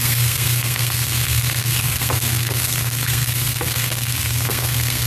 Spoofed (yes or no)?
yes